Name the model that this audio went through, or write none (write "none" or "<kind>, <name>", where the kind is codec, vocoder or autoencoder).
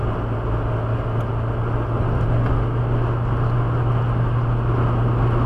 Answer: none